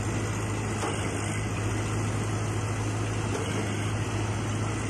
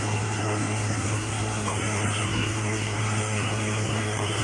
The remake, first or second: second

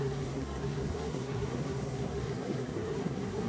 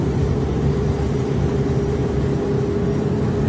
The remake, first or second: first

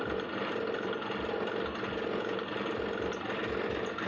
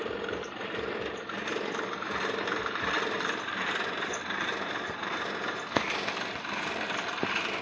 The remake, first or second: second